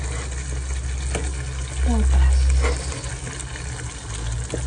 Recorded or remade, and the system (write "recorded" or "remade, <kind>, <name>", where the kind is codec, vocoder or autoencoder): recorded